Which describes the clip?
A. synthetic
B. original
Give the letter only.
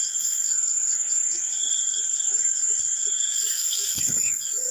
A